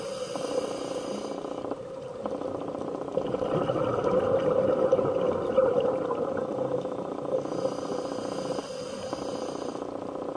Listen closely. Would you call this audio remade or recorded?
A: recorded